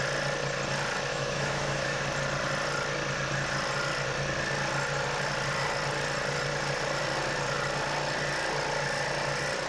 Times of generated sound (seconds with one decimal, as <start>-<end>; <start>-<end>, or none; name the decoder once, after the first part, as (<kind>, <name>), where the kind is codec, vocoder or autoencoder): 1.1-2.0 (autoencoder, DAC-VAE)